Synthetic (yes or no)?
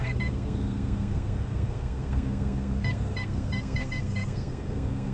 yes